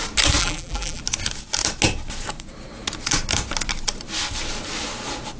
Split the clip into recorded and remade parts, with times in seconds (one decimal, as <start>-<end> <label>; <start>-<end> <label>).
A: 0.0-0.4 recorded; 0.4-1.0 remade; 1.0-5.4 recorded